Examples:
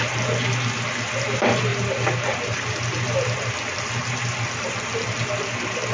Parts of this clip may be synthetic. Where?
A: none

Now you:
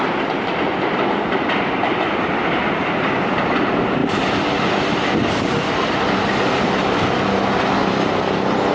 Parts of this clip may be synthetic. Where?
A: none

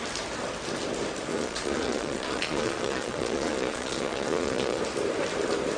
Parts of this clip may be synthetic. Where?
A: 1.3-4.8 (vocoder, Vocos)

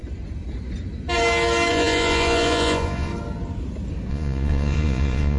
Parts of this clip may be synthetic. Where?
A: 1.7-3.1 (vocoder, Vocos); 4.1-5.4

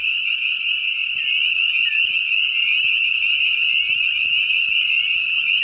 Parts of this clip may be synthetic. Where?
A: none